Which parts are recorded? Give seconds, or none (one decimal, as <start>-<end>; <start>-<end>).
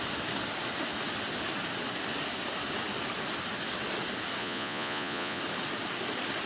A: 0.0-4.4; 5.4-6.5